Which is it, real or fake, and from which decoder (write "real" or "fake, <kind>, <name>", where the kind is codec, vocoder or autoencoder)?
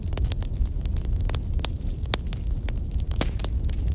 real